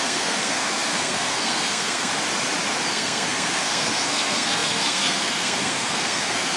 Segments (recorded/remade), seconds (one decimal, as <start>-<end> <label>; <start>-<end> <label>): 0.0-2.1 remade; 2.1-2.9 recorded; 2.9-6.6 remade

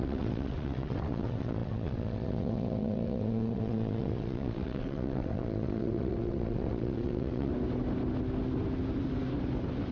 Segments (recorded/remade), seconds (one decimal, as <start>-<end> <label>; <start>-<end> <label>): 0.0-7.5 remade; 7.5-9.9 recorded